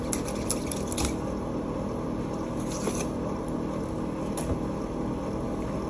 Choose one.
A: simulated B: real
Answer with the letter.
B